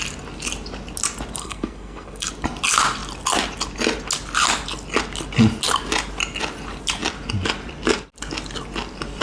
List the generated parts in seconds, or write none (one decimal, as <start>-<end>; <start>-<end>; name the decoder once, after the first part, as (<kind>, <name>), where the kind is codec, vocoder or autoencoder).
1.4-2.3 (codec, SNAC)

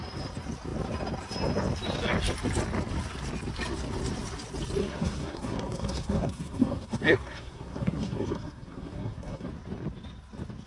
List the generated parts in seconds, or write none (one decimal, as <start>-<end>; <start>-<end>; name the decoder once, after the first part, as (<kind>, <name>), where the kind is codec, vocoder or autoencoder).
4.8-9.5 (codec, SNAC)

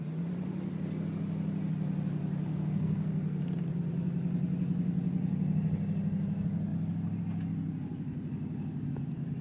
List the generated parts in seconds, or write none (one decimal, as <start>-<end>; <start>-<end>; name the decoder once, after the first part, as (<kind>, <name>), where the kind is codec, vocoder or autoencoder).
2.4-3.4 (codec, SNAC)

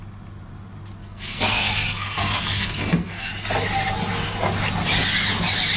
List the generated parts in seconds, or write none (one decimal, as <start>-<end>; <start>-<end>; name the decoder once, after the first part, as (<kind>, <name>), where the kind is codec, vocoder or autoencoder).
1.0-3.3 (codec, SNAC)

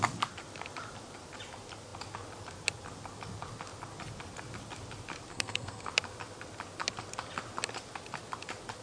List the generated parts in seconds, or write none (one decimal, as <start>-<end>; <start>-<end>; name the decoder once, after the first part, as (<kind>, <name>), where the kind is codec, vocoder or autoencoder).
5.3-5.9 (codec, SNAC)